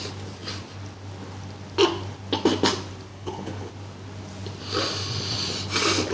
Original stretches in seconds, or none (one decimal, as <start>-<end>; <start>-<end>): 0.0-3.1; 3.7-6.1